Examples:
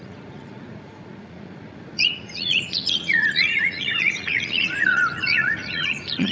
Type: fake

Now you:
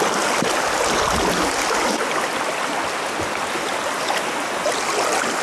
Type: real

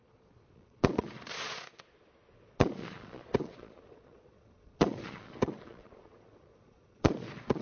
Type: fake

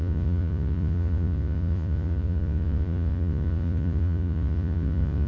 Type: fake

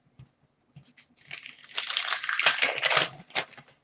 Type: real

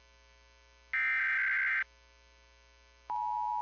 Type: real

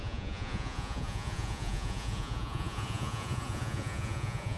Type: fake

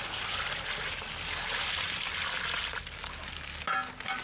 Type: real